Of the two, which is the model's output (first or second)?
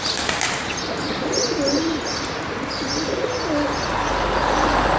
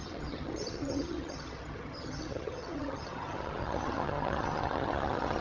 second